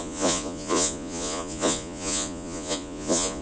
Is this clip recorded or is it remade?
remade